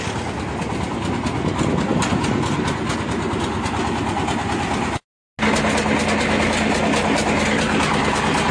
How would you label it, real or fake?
real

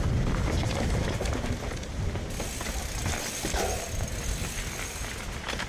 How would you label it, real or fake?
real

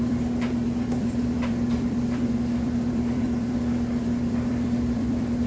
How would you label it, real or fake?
fake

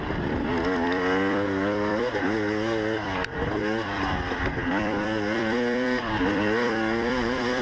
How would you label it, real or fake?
fake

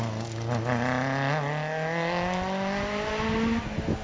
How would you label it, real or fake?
real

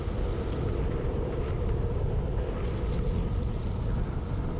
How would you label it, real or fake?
real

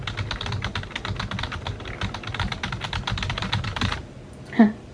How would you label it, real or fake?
real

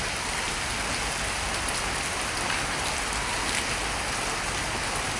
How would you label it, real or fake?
real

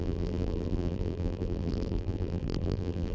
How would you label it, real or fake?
fake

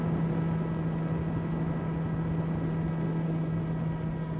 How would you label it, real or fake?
real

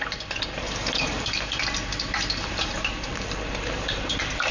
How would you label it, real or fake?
fake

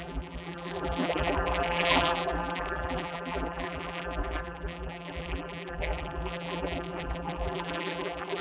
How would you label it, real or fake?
fake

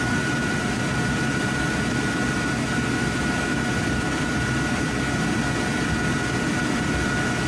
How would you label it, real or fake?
fake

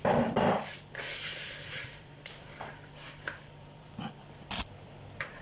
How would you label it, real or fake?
fake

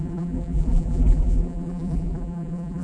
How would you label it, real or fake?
fake